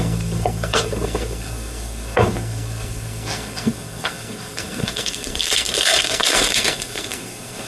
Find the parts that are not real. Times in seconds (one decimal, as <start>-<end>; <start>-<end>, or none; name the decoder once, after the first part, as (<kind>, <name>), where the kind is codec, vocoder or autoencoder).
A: 0.0-7.7 (codec, SNAC)